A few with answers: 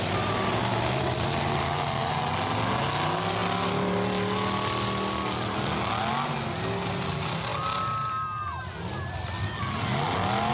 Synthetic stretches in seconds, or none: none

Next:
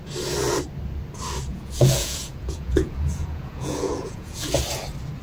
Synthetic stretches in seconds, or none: 1.5-4.6

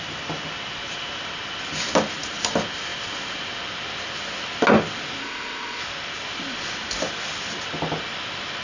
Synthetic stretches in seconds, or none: 5.2-5.8

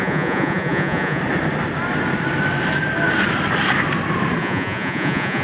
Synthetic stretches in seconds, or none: 0.0-1.2; 4.4-5.4

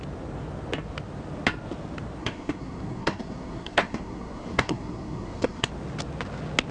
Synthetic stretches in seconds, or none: 2.2-5.7

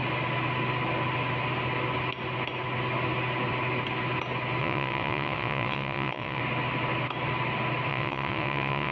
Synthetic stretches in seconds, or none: 4.6-6.4; 7.9-8.9

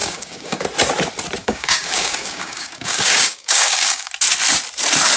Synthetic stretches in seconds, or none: 0.0-0.6; 1.4-4.1

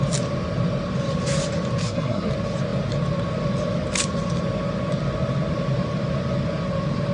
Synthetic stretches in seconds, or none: 1.8-2.3